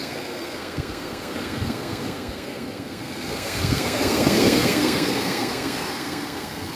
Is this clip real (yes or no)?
no